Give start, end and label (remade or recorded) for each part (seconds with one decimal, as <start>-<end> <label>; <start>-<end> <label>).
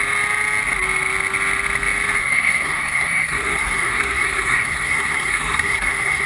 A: 0.0-2.2 recorded; 2.2-6.3 remade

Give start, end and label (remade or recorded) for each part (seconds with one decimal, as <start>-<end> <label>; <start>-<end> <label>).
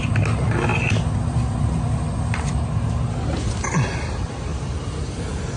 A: 0.0-5.6 recorded